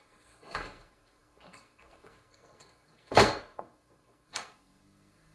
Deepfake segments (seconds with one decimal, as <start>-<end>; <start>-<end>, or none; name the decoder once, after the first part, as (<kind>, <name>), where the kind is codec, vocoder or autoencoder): 0.0-5.3 (codec, SNAC)